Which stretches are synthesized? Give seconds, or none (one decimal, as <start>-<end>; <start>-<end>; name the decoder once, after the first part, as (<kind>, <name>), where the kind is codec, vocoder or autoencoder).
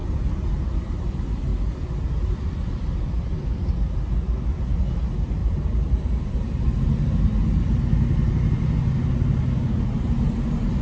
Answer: 1.5-3.8 (vocoder, BigVGAN v2); 5.4-7.1